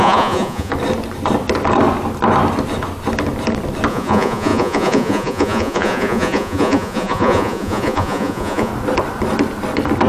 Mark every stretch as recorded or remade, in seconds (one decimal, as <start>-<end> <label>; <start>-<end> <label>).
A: 0.0-0.7 remade; 0.7-3.9 recorded; 3.9-8.7 remade; 8.7-10.1 recorded

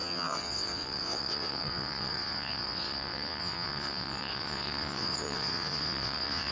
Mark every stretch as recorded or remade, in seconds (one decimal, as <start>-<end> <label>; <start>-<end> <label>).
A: 0.0-6.5 remade

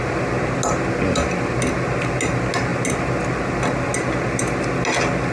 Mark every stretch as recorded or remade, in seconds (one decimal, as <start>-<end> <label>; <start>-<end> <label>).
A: 0.0-5.3 recorded

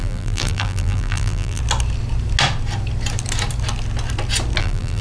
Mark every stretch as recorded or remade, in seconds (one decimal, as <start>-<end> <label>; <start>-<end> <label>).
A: 0.0-1.6 remade; 1.6-4.6 recorded; 4.6-5.0 remade

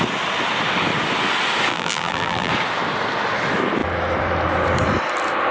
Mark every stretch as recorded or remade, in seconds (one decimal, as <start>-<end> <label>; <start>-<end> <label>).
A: 0.0-1.7 recorded; 1.7-2.5 remade; 2.5-5.5 recorded

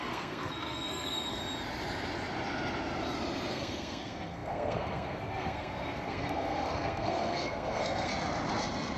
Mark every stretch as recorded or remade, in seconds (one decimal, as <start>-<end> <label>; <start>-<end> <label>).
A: 0.0-1.4 remade; 1.4-3.5 recorded; 3.5-8.1 remade; 8.1-9.0 recorded

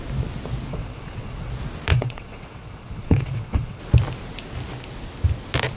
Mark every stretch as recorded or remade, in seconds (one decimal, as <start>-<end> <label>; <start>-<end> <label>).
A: 0.0-0.7 recorded; 0.7-1.5 remade; 1.5-1.9 recorded; 1.9-3.8 remade; 3.8-5.8 recorded